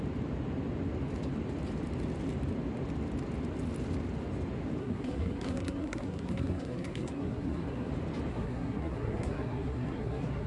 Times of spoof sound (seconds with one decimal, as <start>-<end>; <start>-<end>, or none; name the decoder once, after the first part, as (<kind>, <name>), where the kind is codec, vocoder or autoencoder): 4.8-7.9 (codec, SNAC); 8.3-10.5